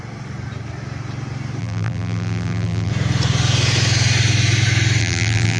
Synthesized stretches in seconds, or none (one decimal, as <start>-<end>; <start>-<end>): 1.6-2.9; 5.0-5.6

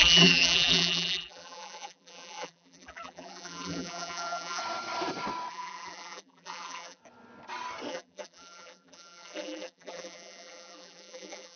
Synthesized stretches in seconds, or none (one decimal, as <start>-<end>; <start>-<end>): 0.0-4.6; 5.5-7.0; 7.9-11.6

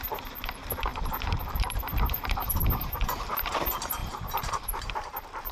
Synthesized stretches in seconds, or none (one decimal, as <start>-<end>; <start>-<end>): 0.0-5.5

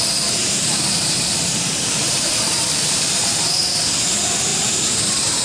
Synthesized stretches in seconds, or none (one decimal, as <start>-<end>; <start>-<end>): 0.4-3.6; 4.5-5.4

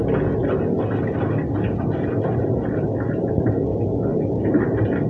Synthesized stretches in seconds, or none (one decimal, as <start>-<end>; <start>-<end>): 4.1-5.1

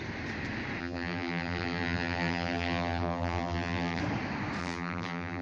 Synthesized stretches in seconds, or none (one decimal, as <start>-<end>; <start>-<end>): 0.8-4.0; 4.6-5.4